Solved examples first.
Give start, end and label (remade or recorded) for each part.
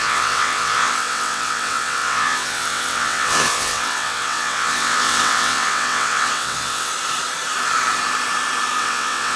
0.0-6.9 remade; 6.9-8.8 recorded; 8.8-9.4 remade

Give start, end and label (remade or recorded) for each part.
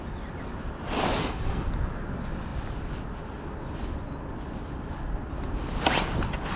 0.0-1.2 recorded; 1.2-1.7 remade; 1.7-6.6 recorded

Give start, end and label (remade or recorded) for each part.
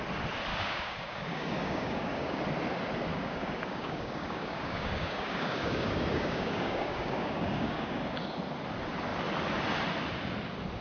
0.0-0.5 recorded; 0.5-2.4 remade; 2.4-3.1 recorded; 3.1-8.2 remade; 8.2-10.8 recorded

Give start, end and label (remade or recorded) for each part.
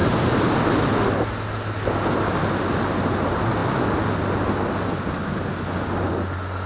0.0-6.7 recorded